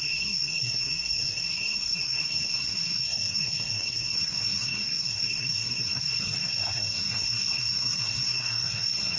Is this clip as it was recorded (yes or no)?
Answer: no